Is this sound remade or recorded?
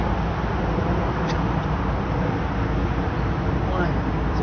recorded